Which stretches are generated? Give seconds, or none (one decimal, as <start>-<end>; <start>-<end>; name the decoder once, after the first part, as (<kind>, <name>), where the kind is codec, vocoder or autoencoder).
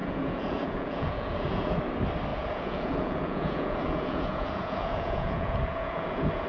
0.0-1.8 (vocoder, Vocos); 2.3-6.5